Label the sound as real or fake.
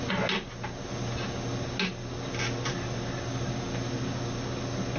real